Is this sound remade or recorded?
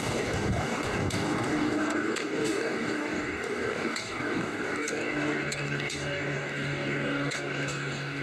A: remade